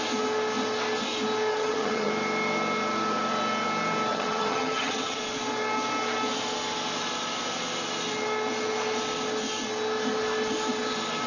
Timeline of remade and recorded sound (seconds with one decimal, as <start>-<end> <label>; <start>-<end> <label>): 0.0-1.5 recorded; 1.5-2.1 remade; 2.1-4.1 recorded; 4.1-5.2 remade; 5.2-11.3 recorded